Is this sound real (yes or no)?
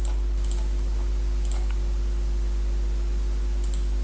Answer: yes